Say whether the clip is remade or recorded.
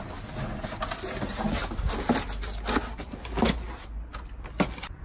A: recorded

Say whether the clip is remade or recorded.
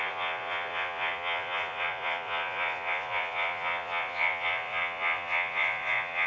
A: remade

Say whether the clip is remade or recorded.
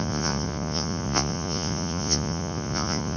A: remade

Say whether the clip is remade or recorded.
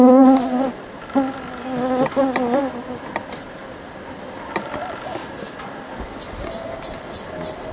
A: recorded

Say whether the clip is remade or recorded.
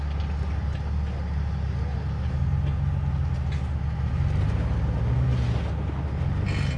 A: recorded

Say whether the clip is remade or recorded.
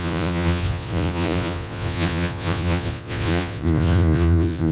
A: remade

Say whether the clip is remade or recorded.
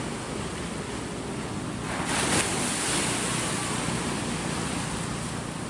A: recorded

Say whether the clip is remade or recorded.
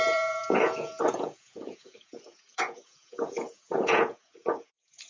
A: remade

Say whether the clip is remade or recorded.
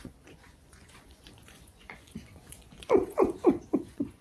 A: remade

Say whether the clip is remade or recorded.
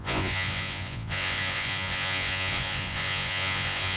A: remade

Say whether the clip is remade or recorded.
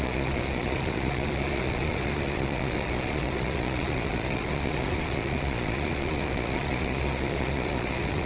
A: remade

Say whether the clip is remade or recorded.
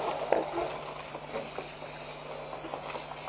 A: recorded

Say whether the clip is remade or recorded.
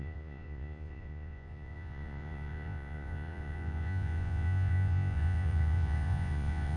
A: remade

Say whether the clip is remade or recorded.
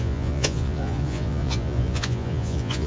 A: remade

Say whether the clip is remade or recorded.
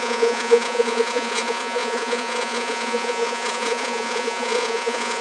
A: remade